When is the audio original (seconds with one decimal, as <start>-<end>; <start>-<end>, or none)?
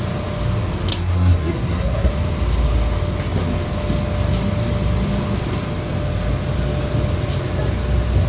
0.0-0.9; 2.1-8.3